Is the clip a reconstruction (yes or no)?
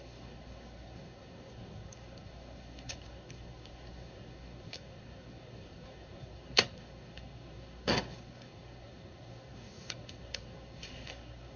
yes